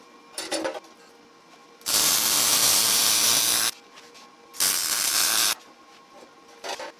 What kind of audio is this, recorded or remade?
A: recorded